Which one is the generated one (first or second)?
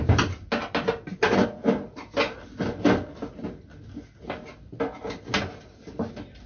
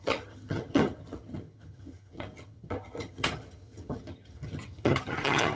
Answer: second